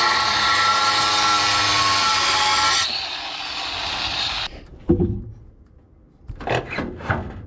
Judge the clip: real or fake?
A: real